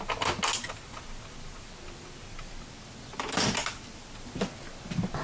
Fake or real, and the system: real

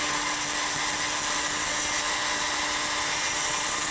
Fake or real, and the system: real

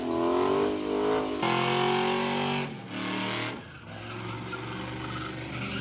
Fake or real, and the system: real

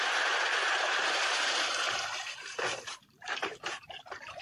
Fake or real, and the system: fake, vocoder, BigVGAN v2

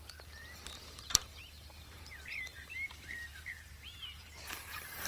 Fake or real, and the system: fake, vocoder, BigVGAN v2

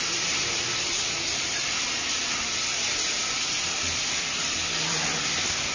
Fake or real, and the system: fake, vocoder, BigVGAN v2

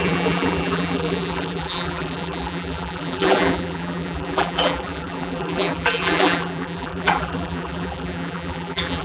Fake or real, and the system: fake, vocoder, BigVGAN v2